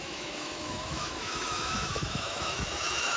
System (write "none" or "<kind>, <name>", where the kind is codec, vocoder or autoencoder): autoencoder, DAC-VAE